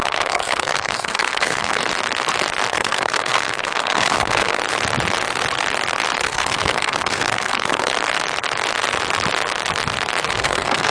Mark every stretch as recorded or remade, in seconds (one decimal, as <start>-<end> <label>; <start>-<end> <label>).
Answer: 0.0-1.8 remade; 1.8-2.7 recorded; 2.7-4.6 remade; 4.6-6.2 recorded; 6.2-7.9 remade; 7.9-10.3 recorded; 10.3-10.9 remade